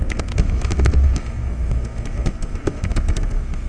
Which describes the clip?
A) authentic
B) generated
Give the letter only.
B